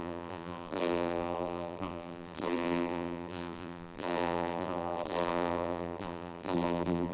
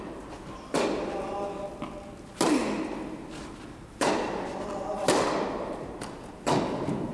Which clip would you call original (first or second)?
second